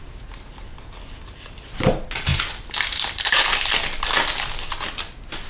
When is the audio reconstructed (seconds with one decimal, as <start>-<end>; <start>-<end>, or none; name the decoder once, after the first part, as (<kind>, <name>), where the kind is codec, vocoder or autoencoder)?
none

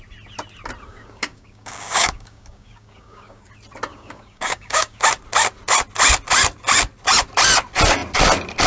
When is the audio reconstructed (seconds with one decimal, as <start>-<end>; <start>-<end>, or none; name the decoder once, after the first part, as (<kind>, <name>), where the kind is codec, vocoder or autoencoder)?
0.9-3.5 (codec, DAC); 3.9-5.0

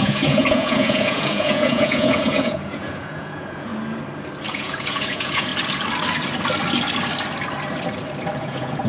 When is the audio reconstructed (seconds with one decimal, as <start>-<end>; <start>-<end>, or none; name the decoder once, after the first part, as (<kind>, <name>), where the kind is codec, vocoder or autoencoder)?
0.0-3.7 (vocoder, Vocos); 4.5-5.5; 8.4-8.9

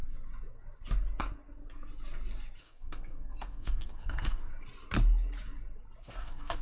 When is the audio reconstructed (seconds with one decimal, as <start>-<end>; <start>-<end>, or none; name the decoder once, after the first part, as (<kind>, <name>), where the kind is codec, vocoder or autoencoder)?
2.6-4.5 (codec, SNAC); 6.0-6.6

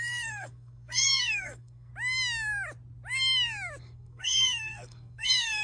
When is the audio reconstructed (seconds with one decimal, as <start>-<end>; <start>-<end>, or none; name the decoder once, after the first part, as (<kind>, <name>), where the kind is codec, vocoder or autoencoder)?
0.0-1.9 (codec, SNAC); 3.8-5.6